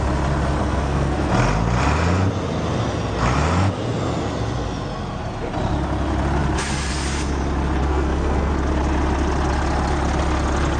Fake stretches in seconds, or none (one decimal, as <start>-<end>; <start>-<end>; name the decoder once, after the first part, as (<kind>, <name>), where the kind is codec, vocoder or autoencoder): 0.6-1.3 (codec, SNAC); 7.8-8.5